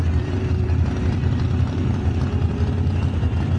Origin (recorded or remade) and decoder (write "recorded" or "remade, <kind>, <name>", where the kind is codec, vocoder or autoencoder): remade, vocoder, BigVGAN v2